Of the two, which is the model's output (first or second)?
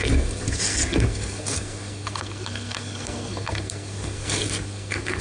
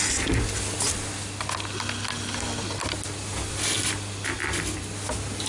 first